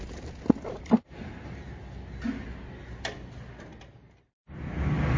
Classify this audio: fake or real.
real